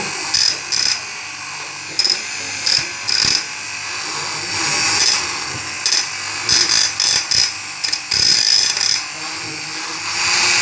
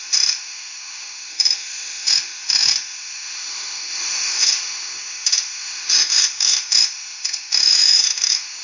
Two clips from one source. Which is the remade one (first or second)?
second